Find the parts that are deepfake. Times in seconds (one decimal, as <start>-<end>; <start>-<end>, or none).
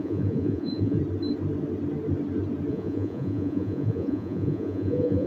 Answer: 0.0-1.0; 2.7-5.3